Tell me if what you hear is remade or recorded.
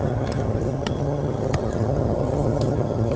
remade